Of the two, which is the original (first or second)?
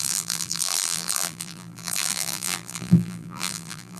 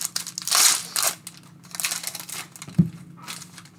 second